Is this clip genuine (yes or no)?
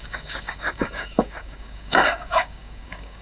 no